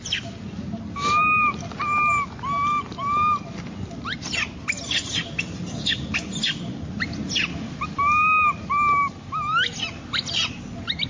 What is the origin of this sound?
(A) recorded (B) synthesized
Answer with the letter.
A